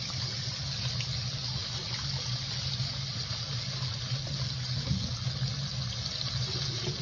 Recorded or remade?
recorded